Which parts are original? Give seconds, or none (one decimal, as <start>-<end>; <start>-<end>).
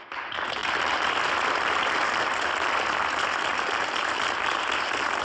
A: 0.0-5.2